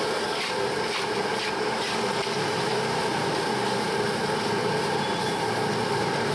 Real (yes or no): yes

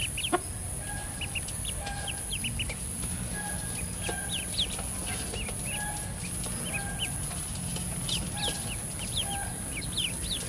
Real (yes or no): yes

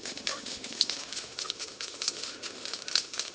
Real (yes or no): no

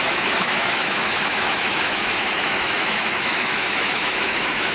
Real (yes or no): no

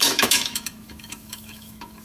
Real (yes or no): no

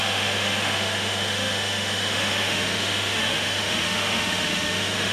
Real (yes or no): no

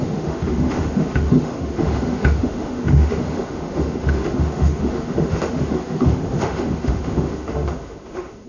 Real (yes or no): no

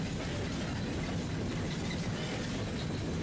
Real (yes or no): yes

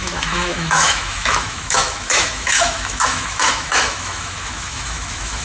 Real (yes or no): no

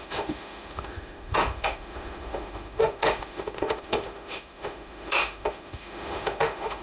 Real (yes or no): no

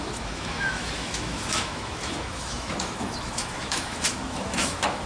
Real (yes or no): no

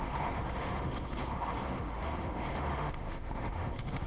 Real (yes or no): no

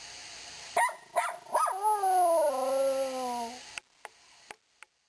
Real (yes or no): yes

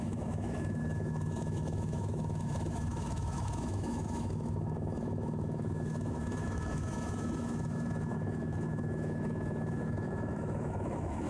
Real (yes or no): no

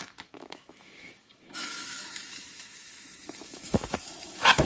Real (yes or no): no